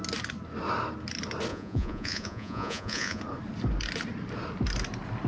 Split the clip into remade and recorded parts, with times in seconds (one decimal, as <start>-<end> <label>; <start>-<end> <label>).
0.0-1.5 recorded; 1.5-3.2 remade; 3.2-5.3 recorded